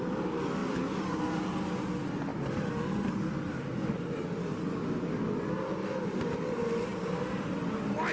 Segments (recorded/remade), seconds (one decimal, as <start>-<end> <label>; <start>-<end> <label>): 0.0-0.6 recorded; 0.6-1.4 remade; 1.4-2.3 recorded; 2.3-4.7 remade; 4.7-8.1 recorded